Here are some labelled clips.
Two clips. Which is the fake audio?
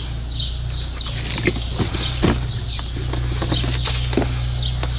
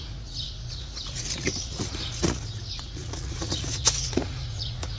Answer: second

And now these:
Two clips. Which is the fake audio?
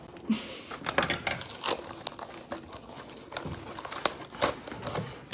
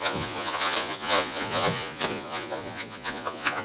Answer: second